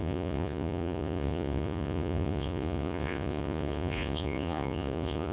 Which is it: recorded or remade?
remade